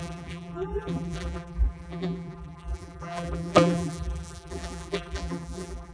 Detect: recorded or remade remade